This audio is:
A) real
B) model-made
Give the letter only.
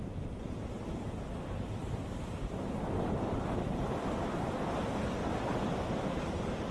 A